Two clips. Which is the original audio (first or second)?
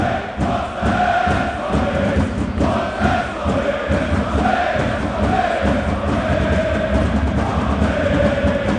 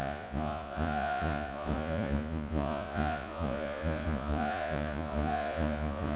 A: first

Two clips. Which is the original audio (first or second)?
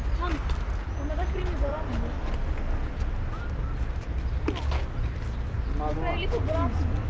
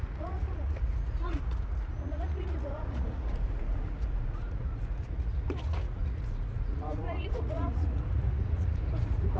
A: first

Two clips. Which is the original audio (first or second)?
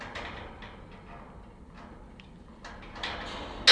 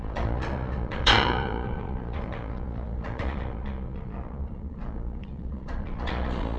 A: first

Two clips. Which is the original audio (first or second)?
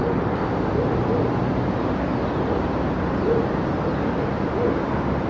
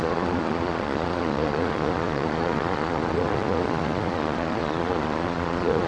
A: first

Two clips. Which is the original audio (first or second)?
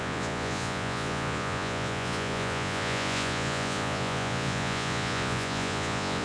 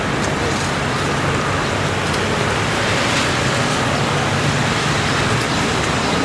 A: second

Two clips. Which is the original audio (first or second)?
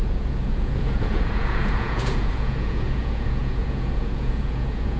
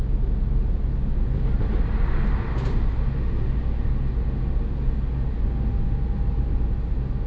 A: second